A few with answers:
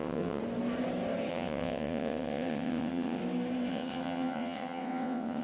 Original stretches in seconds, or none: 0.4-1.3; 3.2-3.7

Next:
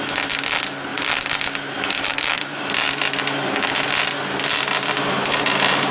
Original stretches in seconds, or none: 0.0-0.9; 3.7-5.9

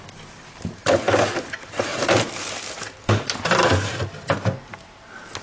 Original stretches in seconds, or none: 0.0-0.8; 4.0-5.4

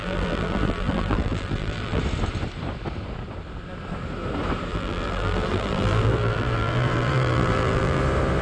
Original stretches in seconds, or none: 2.0-4.7; 8.0-8.4

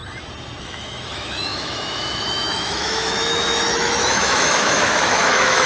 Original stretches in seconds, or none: 0.0-0.6

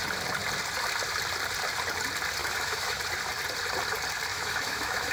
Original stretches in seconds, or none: 0.0-2.4; 3.0-4.3

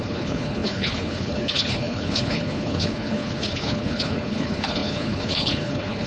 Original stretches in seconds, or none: none